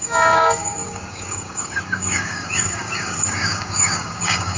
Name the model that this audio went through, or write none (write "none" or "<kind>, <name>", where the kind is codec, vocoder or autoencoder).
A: codec, DAC